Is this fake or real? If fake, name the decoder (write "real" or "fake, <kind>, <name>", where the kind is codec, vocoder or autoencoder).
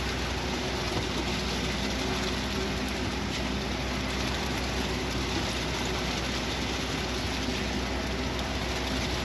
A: real